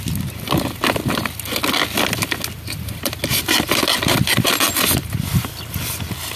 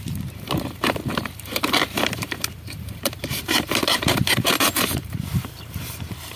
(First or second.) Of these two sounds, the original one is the first